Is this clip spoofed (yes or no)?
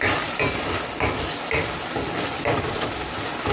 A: no